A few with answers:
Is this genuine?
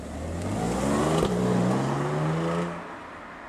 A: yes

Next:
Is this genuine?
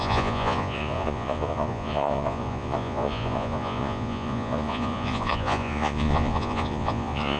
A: no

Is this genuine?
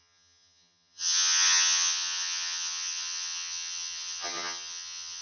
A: no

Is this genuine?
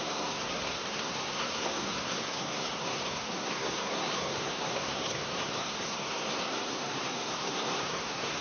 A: no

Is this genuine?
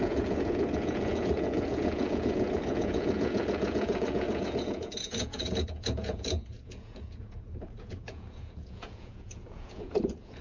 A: no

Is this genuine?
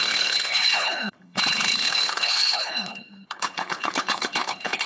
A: no